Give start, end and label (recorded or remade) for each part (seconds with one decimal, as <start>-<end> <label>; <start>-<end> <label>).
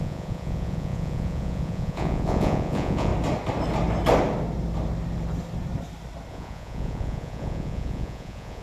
0.0-3.1 remade; 3.1-6.3 recorded; 6.3-8.6 remade